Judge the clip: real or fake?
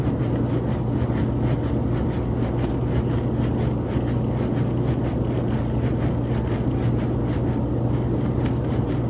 real